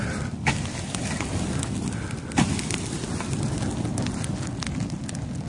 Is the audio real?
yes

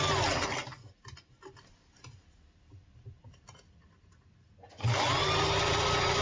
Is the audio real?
yes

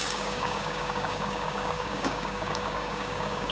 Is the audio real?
no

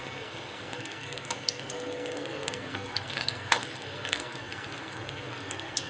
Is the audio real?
no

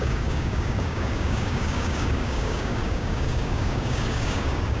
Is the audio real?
no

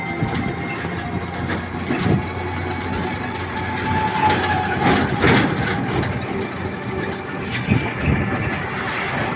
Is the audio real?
yes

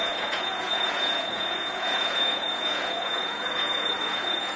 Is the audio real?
no